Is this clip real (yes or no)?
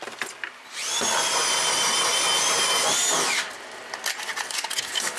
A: yes